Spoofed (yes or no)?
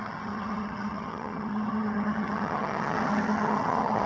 yes